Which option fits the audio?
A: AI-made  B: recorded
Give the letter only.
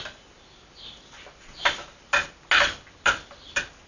B